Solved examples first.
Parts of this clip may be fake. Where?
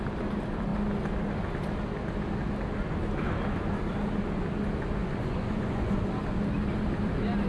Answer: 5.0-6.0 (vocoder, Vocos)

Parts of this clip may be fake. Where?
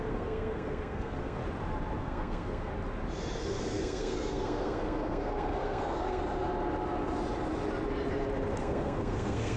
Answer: 0.0-1.4 (codec, SNAC); 2.0-2.7; 3.6-6.2; 8.6-9.6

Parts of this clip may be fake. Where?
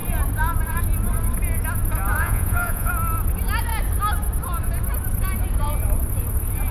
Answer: 2.2-2.9 (vocoder, Vocos)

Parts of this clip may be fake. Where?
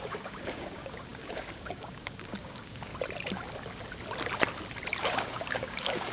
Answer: 0.0-2.9 (codec, DAC); 5.0-6.1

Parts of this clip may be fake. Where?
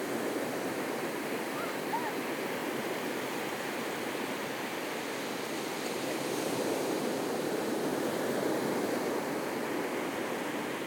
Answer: 0.0-10.9 (vocoder, BigVGAN v2)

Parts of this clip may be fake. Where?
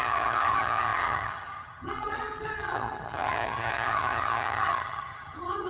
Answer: 0.0-5.7 (vocoder, HiFi-GAN)